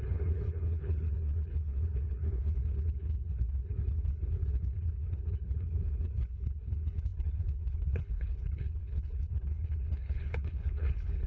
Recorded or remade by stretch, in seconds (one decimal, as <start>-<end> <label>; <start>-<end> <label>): 0.0-11.3 remade